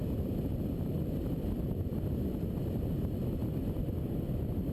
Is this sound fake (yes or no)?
no